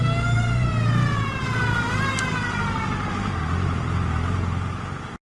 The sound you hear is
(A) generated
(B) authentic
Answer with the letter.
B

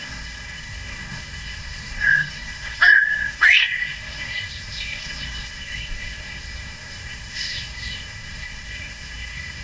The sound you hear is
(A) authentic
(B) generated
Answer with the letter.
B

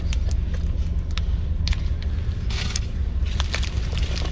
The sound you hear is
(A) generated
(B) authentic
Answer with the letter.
B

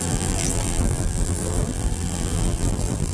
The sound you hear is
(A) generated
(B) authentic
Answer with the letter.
A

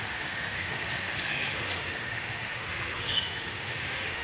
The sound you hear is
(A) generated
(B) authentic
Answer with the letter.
A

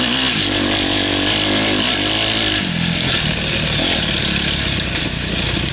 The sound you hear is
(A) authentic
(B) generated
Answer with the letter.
A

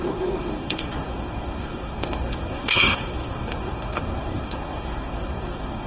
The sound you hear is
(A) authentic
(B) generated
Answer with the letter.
B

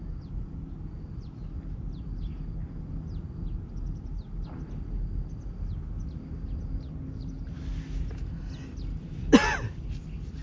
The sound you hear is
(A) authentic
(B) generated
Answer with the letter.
A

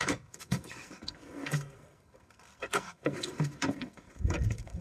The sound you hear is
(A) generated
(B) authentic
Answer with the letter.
A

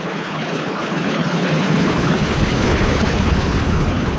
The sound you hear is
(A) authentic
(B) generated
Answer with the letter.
B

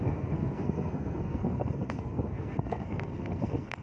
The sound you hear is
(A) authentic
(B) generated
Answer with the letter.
B